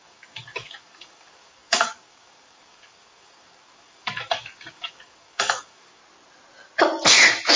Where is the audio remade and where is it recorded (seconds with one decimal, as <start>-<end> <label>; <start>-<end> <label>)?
0.0-6.0 remade; 6.0-7.6 recorded